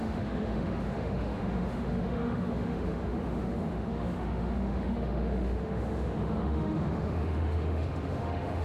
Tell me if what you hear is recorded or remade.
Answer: remade